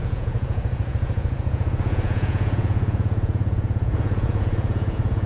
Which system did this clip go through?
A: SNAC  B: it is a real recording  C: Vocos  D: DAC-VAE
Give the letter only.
C